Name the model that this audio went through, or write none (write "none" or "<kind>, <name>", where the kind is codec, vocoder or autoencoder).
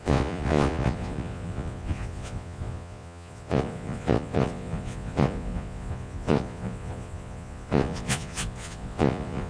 vocoder, Vocos